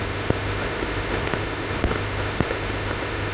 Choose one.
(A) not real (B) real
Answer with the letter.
A